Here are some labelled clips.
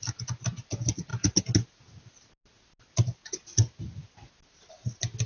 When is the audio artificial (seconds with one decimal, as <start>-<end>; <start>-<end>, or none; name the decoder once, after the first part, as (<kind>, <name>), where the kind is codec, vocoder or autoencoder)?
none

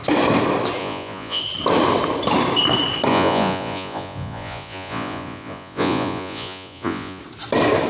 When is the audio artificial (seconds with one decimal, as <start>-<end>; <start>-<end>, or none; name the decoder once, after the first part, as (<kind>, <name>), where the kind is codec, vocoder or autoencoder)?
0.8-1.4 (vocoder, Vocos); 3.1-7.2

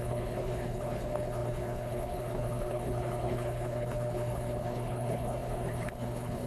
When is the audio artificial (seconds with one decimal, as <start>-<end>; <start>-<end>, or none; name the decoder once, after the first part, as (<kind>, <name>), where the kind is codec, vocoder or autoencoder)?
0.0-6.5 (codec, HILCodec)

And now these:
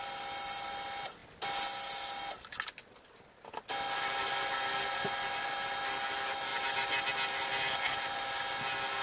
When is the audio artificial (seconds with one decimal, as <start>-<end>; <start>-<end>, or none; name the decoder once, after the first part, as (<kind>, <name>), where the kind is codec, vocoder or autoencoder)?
none

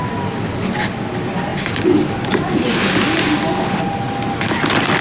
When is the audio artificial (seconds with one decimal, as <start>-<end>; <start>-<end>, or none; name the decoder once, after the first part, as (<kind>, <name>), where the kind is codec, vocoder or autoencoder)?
none

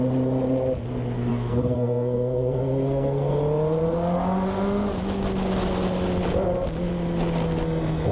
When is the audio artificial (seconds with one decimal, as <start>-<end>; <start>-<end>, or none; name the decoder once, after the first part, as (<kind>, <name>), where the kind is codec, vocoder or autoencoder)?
1.3-3.4 (codec, SNAC)

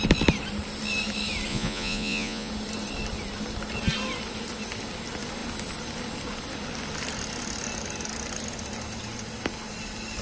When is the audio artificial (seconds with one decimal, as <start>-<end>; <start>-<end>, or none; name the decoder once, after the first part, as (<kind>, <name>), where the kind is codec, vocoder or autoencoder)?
1.5-2.5 (vocoder, Vocos)